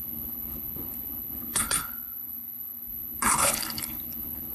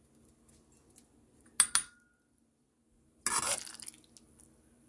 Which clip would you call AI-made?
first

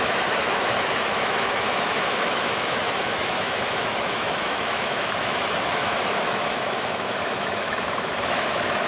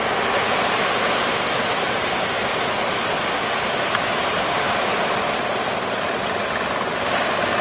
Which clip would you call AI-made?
first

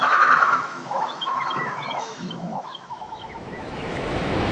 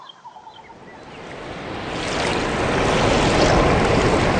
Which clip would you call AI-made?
first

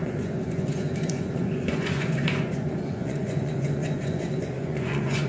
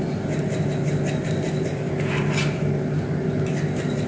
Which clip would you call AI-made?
first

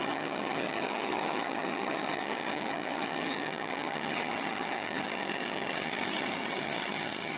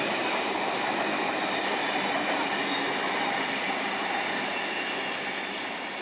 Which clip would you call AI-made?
first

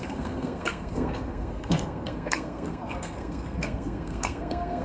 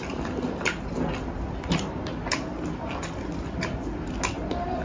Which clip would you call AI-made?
first